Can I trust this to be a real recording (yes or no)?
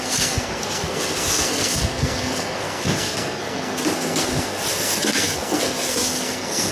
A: no